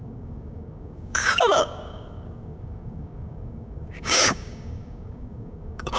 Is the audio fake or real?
fake